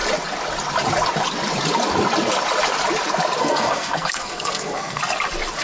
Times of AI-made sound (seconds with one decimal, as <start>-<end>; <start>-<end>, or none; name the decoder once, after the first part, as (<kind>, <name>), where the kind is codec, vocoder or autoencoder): 3.4-5.0 (codec, SNAC)